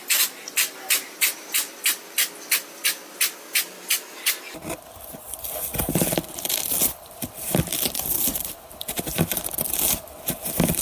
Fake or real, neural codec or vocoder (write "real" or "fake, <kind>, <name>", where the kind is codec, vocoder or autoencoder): fake, vocoder, BigVGAN v2